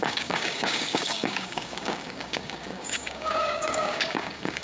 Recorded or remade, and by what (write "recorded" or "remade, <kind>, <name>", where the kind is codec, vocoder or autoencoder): remade, codec, DAC